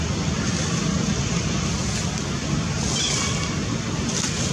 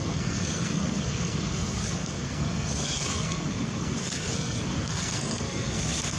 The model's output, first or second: second